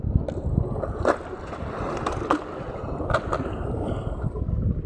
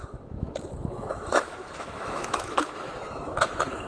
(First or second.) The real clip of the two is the first